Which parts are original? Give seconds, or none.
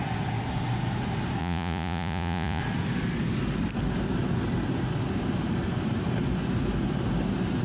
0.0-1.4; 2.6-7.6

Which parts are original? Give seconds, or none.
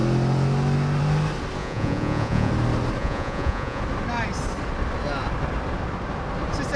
0.0-1.6; 2.5-3.0; 3.8-6.8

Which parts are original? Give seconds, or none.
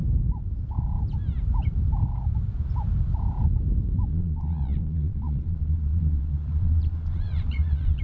0.0-4.1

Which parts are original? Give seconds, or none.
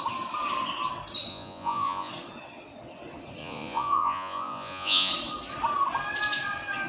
0.0-1.3; 2.1-3.4; 5.1-6.9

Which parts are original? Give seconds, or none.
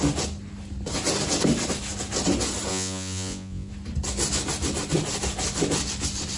0.0-2.7; 3.7-6.4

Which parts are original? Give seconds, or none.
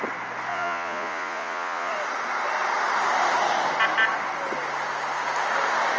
0.0-0.5; 1.9-6.0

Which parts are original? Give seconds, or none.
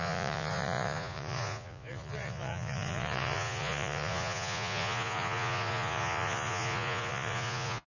none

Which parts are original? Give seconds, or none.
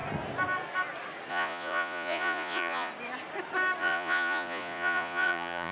0.0-1.3; 2.9-3.8